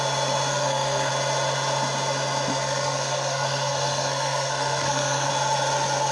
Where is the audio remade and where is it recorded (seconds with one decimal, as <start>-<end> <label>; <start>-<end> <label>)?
0.0-0.5 recorded; 0.5-1.1 remade; 1.1-2.5 recorded; 2.5-5.3 remade; 5.3-6.1 recorded